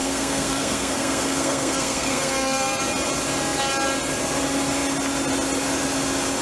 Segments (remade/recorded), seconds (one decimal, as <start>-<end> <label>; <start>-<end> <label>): 0.0-2.8 remade; 2.8-6.4 recorded